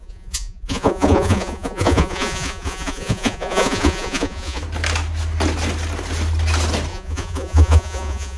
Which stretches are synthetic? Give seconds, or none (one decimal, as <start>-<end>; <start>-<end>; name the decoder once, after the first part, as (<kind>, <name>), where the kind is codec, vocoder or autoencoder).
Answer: 0.0-4.6 (vocoder, Vocos); 6.9-8.4